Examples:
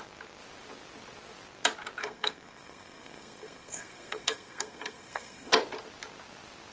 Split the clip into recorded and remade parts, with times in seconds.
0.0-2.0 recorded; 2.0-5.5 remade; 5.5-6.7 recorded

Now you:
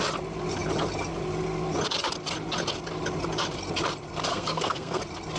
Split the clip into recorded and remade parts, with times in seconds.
0.0-4.3 recorded; 4.3-5.0 remade; 5.0-5.4 recorded